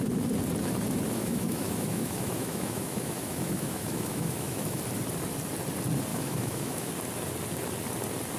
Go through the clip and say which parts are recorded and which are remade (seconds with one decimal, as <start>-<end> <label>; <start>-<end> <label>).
0.0-1.2 recorded; 1.2-4.8 remade; 4.8-6.1 recorded; 6.1-6.9 remade; 6.9-8.4 recorded